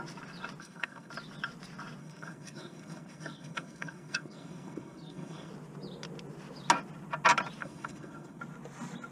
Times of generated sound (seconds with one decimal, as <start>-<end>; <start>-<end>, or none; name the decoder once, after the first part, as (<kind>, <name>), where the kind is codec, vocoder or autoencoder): 0.6-1.1 (codec, SNAC); 2.0-5.5; 7.6-8.4